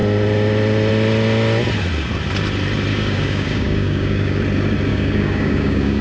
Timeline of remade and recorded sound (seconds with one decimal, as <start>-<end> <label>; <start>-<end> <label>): 0.0-2.9 recorded; 2.9-4.4 remade; 4.4-4.9 recorded; 4.9-6.0 remade